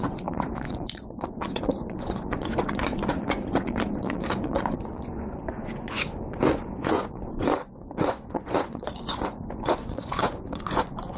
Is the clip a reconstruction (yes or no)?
yes